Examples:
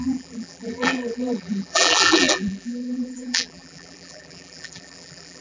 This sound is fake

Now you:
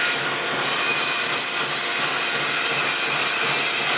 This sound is real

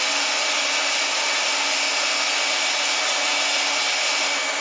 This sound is real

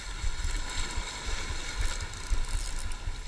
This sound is real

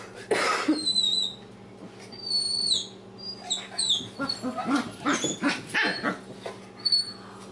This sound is real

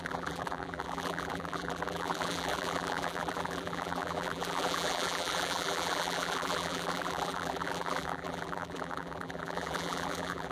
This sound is fake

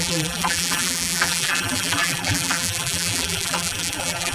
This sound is fake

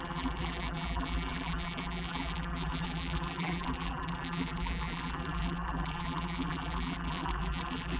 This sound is fake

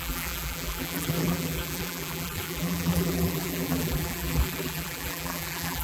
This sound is fake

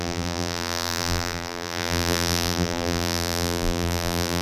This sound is fake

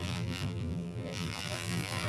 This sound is fake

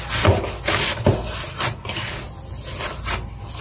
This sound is real